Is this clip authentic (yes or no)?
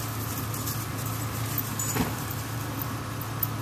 yes